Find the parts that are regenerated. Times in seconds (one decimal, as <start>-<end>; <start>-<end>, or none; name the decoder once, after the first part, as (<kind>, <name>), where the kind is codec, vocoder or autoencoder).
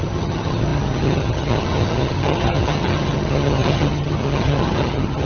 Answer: 0.0-5.3 (vocoder, HiFi-GAN)